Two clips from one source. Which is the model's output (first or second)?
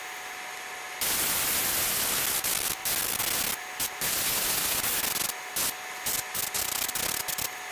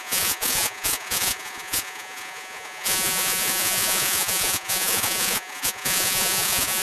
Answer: second